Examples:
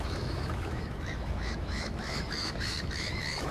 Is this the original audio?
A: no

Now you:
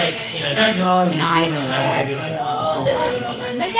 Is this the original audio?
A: no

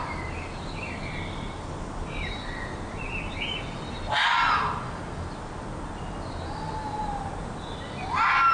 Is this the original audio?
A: yes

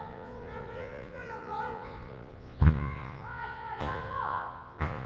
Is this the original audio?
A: no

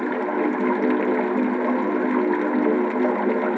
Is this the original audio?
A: yes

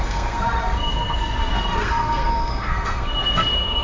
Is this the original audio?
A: no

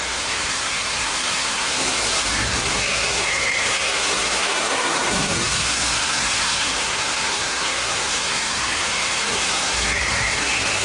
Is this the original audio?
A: no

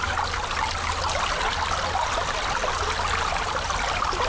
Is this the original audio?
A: yes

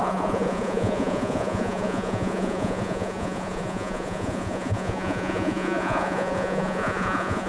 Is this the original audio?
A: no